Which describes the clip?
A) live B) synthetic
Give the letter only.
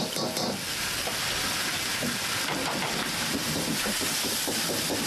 A